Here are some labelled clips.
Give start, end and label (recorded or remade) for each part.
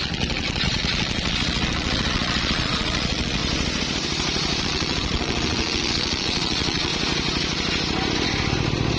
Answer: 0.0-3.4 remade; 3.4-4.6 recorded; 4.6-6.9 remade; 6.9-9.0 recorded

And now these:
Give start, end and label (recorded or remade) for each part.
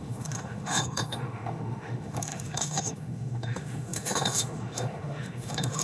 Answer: 0.0-5.8 remade